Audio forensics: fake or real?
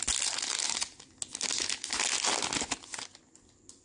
real